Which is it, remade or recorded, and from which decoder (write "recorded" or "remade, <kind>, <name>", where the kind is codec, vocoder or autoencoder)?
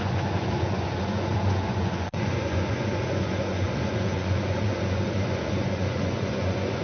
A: remade, vocoder, Vocos